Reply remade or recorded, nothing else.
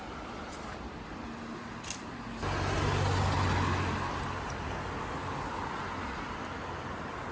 recorded